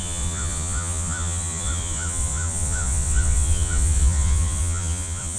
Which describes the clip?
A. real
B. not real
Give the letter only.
B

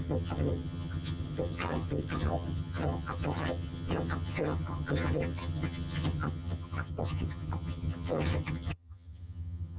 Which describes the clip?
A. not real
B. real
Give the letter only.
A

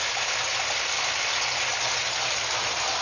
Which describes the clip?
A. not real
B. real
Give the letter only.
B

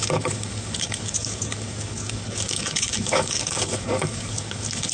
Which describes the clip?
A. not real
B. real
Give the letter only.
A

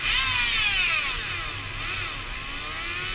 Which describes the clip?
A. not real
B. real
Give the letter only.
B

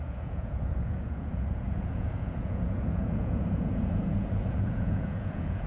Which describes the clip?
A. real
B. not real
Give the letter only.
B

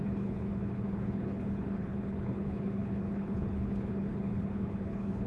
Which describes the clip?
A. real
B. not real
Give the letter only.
B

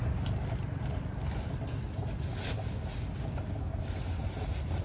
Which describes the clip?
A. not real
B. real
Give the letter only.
B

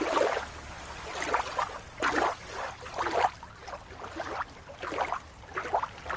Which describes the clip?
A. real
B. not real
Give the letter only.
A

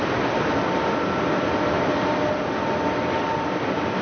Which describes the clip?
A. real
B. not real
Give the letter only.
A